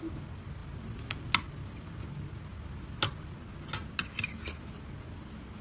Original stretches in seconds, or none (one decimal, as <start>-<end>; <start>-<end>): 0.0-5.6